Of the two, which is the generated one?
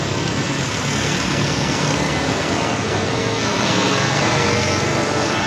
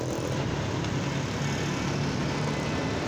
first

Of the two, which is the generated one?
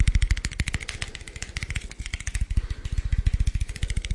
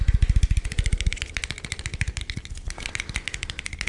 second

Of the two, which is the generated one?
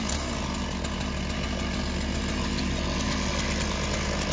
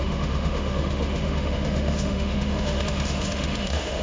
second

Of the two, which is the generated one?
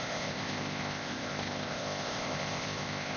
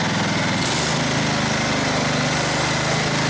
first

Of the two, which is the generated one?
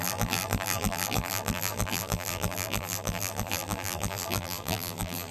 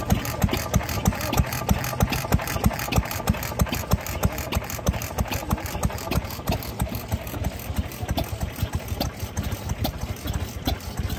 first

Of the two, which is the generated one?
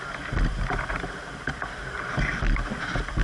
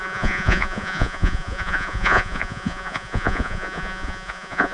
second